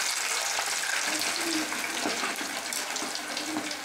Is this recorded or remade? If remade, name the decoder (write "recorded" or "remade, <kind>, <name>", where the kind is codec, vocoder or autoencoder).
recorded